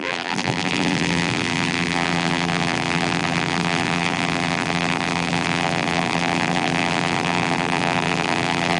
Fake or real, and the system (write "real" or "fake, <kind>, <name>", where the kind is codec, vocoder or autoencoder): fake, vocoder, BigVGAN v2